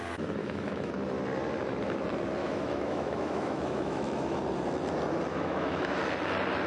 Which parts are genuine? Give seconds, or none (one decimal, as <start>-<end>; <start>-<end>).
0.0-0.4; 0.9-2.4; 4.4-5.3; 6.0-6.7

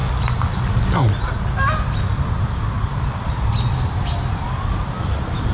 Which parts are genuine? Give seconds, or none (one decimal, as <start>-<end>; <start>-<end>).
0.0-5.5

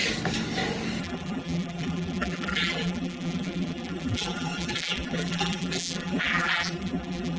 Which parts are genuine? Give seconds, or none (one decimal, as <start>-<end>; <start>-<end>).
0.0-1.0

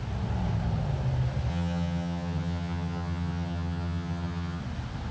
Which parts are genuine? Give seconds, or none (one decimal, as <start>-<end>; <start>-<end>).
0.0-1.5; 4.6-5.1

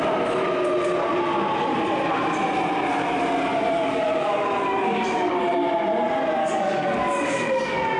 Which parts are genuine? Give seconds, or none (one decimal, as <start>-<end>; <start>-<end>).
0.0-3.5; 5.4-6.4

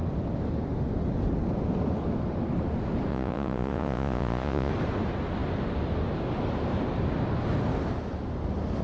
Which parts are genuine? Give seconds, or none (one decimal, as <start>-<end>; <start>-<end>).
0.0-3.1; 4.7-8.8

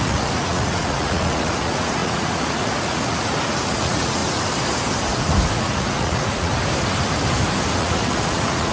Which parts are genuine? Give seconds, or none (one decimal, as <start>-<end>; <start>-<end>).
4.2-5.6; 6.5-7.8

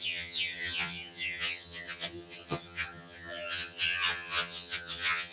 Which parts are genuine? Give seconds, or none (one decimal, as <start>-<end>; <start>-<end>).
none